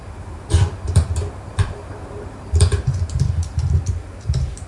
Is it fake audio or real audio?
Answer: fake